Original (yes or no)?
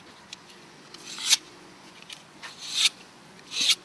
no